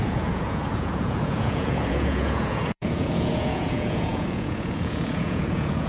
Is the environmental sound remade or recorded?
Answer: remade